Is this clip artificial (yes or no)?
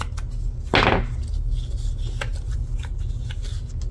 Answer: no